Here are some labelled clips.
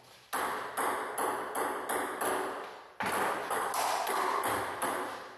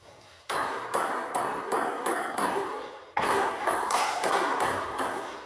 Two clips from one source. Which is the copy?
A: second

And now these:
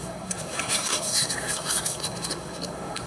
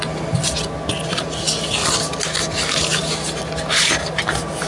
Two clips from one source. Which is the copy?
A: first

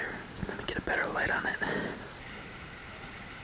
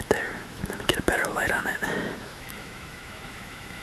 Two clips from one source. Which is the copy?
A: second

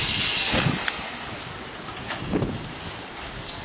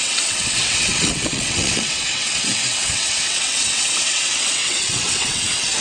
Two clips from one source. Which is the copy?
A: second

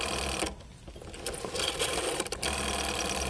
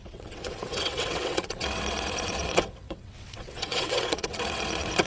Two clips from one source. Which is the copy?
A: second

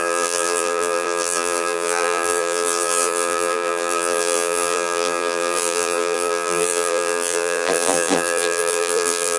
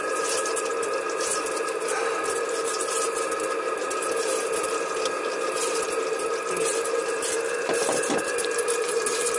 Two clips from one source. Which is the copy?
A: first